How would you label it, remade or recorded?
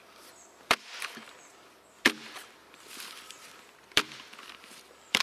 remade